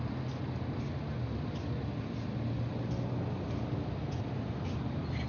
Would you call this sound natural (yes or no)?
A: yes